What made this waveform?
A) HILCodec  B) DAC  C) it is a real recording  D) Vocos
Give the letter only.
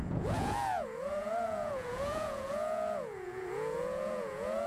D